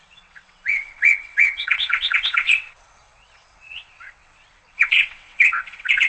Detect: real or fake fake